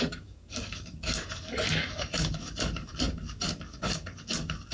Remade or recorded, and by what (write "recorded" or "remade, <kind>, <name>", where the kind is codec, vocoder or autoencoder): remade, codec, DAC